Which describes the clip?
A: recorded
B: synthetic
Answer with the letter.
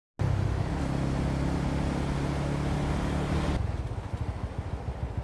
A